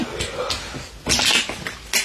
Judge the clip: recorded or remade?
recorded